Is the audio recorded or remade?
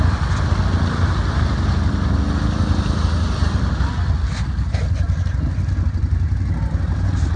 recorded